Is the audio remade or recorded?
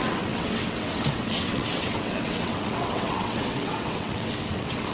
remade